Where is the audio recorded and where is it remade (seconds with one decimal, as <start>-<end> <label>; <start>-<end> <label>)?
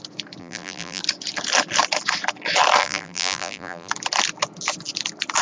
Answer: 0.0-0.4 recorded; 0.4-1.0 remade; 1.0-2.8 recorded; 2.8-3.9 remade; 3.9-5.4 recorded